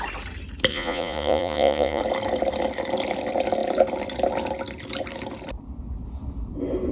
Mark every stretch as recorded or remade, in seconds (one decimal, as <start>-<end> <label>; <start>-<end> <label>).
0.0-0.7 recorded; 0.7-2.0 remade; 2.0-6.9 recorded